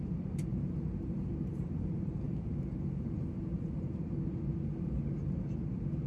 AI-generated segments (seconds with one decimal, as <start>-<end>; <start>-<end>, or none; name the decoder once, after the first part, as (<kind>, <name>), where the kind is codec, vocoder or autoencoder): 0.5-4.2 (vocoder, BigVGAN v2)